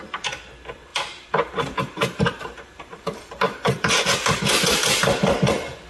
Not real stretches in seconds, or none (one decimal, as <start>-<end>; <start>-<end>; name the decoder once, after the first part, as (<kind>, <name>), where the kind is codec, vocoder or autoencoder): 0.9-4.4 (vocoder, BigVGAN v2)